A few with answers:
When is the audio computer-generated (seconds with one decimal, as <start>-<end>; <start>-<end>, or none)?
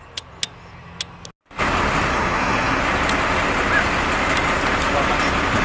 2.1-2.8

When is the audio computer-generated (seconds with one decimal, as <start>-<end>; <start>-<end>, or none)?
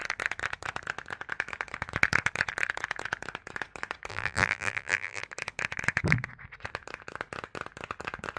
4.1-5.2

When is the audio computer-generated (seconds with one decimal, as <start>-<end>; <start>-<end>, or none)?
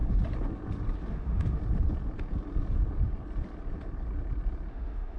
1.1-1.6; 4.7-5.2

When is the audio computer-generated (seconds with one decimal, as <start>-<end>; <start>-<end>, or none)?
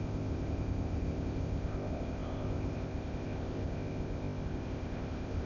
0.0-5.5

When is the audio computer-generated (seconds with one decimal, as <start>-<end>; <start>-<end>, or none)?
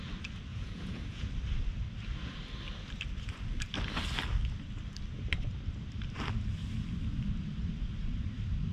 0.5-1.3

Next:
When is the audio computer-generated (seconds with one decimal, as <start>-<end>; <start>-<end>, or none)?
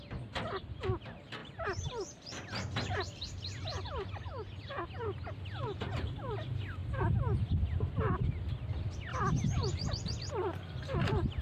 1.4-4.1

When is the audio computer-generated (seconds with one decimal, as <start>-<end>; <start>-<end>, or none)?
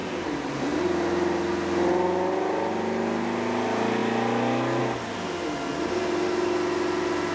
0.0-0.8